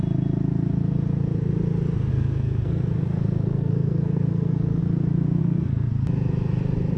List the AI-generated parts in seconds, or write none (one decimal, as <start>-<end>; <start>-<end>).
2.1-4.8; 5.4-5.9